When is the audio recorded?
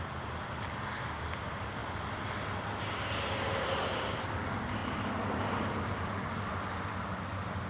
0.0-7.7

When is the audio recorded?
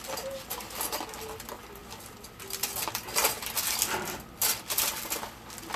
0.0-5.8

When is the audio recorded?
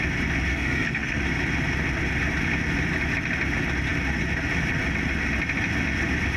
0.0-0.5; 1.2-6.4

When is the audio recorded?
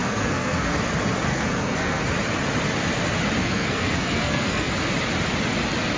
0.8-1.3; 2.0-3.4; 4.7-6.0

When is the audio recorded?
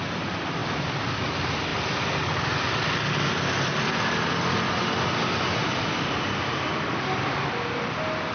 0.0-8.3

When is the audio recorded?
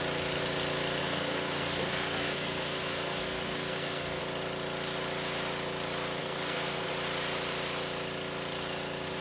0.0-1.0; 4.2-6.2; 6.9-9.2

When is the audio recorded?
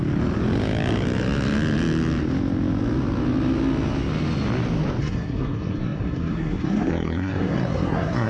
0.0-5.0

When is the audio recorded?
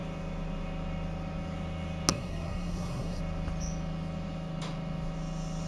0.0-2.1; 3.2-5.7